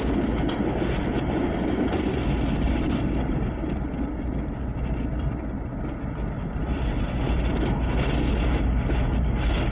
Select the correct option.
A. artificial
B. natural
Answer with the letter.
B